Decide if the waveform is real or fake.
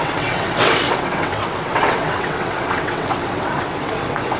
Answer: fake